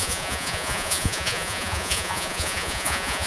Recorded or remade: remade